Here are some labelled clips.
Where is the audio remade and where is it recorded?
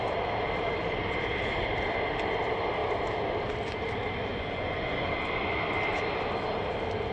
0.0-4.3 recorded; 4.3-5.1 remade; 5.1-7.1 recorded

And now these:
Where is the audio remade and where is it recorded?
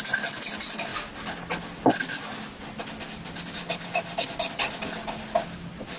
0.0-6.0 recorded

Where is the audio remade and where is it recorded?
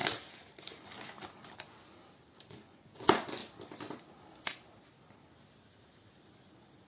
0.0-2.5 recorded; 2.5-3.4 remade; 3.4-6.9 recorded